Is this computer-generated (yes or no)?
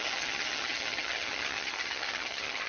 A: yes